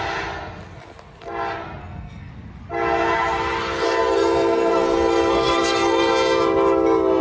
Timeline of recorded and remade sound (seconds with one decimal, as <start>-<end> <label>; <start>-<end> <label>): 0.0-1.8 recorded; 1.8-2.3 remade; 2.3-4.0 recorded; 4.0-6.1 remade; 6.1-7.2 recorded